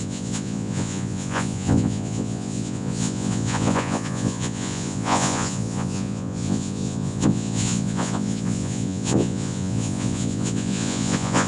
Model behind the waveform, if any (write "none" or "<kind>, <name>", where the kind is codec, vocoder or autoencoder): vocoder, Vocos